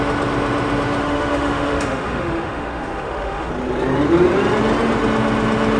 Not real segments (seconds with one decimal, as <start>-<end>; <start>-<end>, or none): 1.0-3.5